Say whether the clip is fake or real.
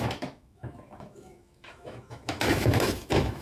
fake